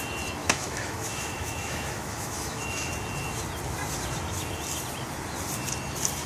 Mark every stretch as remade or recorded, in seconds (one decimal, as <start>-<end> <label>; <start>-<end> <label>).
0.0-0.4 recorded; 0.4-2.9 remade; 2.9-6.3 recorded